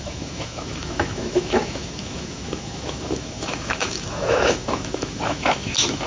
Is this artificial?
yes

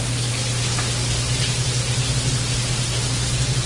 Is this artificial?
no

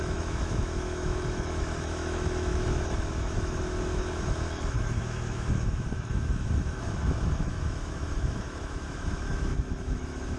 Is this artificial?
yes